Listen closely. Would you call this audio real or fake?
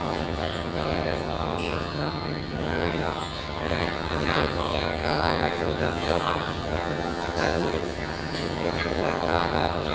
fake